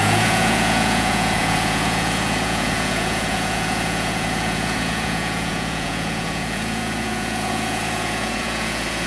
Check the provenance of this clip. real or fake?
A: fake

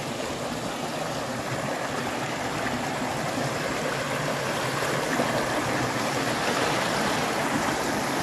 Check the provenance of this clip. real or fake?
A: real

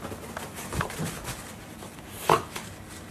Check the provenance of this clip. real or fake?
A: real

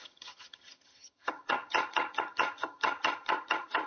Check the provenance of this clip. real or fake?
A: fake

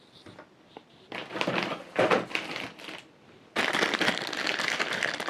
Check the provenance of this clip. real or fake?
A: real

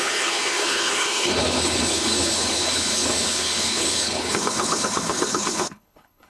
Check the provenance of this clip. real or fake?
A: fake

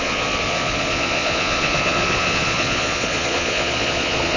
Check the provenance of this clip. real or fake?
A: fake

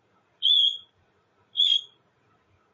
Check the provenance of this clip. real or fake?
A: fake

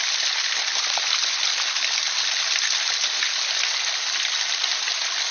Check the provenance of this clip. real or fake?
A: real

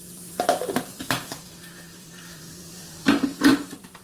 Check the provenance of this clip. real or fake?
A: fake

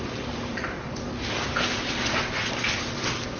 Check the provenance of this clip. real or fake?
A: real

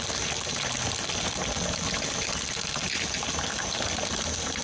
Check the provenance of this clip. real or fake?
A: real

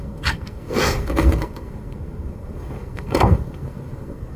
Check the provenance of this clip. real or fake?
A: fake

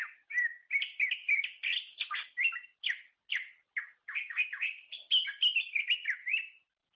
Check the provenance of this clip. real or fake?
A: real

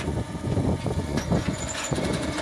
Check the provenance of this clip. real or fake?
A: fake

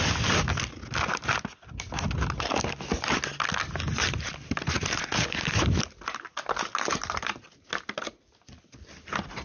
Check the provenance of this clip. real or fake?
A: real